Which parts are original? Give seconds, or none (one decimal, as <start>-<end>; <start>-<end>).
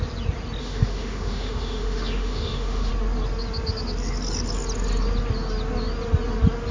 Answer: 0.0-0.6; 2.9-6.7